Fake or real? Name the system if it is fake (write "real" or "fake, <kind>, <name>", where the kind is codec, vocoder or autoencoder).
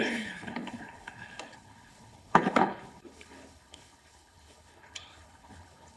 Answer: fake, codec, HILCodec